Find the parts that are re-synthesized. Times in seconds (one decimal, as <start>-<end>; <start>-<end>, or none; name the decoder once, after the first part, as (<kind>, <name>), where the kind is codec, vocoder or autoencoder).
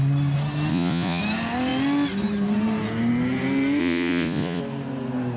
0.7-1.2 (vocoder, Vocos); 3.8-4.6